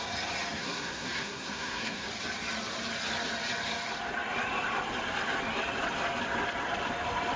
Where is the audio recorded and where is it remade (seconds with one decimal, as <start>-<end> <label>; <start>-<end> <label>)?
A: 0.0-0.6 recorded; 0.6-2.1 remade; 2.1-7.4 recorded